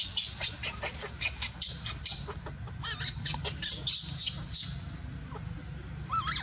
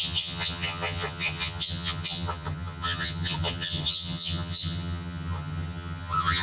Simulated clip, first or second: second